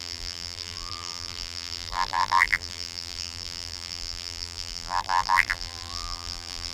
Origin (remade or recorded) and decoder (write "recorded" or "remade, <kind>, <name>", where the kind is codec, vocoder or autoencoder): remade, vocoder, BigVGAN v2